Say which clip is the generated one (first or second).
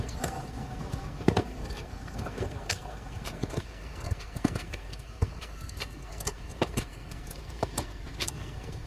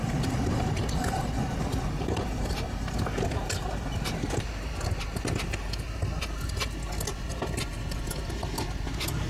first